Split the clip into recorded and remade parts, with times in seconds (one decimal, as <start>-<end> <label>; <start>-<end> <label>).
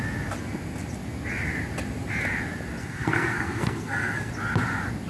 0.0-2.8 recorded; 2.8-4.3 remade; 4.3-5.1 recorded